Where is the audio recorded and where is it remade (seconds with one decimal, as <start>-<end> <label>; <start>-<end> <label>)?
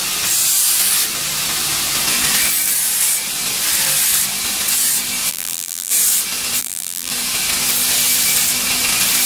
0.0-5.3 recorded; 5.3-5.9 remade; 5.9-6.6 recorded; 6.6-7.1 remade; 7.1-9.3 recorded